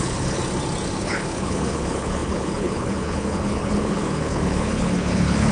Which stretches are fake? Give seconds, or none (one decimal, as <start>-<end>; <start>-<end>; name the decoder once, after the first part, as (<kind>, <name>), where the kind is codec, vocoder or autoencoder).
0.0-0.4 (codec, HILCodec); 1.0-5.5